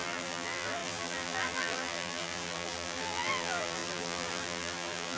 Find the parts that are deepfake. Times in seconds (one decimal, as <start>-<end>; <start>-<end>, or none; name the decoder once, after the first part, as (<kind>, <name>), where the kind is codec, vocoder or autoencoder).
0.0-5.2 (vocoder, BigVGAN v2)